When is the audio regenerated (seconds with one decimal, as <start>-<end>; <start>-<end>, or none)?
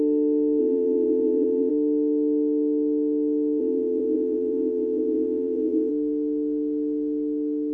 0.6-1.7; 3.6-5.9